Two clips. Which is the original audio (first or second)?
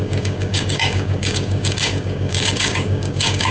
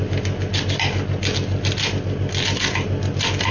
second